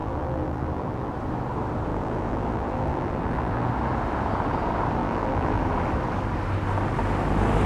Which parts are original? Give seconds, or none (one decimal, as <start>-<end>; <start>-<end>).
1.1-1.9; 3.7-5.0; 5.6-7.7